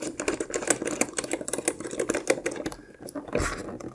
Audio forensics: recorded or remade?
recorded